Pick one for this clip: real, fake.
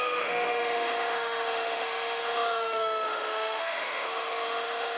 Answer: fake